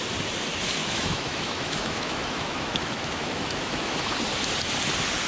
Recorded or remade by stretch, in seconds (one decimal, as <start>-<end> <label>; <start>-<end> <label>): 0.0-0.8 recorded; 0.8-4.0 remade; 4.0-5.3 recorded